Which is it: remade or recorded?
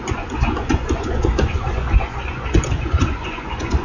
remade